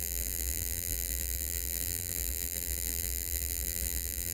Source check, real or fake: fake